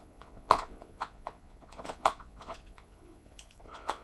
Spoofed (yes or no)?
yes